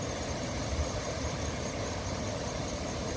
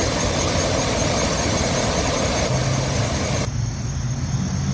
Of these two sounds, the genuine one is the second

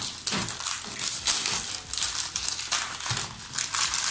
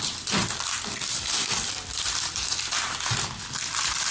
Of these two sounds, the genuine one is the first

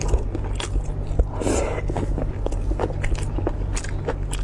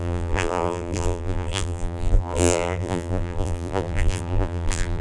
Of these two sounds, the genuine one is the first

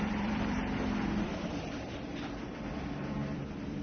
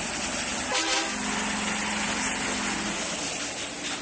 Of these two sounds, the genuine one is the second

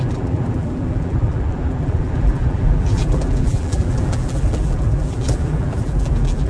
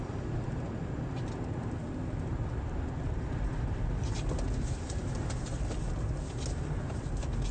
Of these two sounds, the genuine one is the second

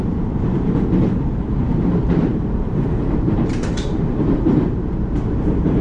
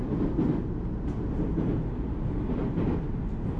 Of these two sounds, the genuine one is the second